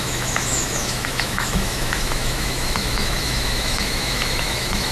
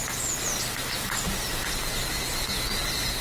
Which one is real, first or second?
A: second